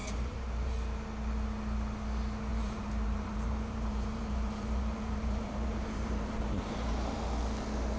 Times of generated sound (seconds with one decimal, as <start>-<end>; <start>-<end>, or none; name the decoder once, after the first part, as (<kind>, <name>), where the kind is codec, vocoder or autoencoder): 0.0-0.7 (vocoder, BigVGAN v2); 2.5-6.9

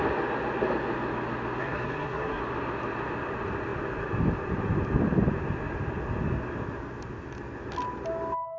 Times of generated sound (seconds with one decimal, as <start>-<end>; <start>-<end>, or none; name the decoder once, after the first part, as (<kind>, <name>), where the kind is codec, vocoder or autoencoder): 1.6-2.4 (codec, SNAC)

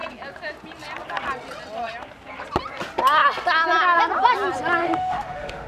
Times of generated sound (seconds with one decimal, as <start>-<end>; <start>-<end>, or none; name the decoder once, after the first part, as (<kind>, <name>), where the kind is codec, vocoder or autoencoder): 4.8-5.7 (autoencoder, DAC-VAE)

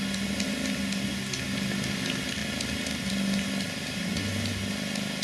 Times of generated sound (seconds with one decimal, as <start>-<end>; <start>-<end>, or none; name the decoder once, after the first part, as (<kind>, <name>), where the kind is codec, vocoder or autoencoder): none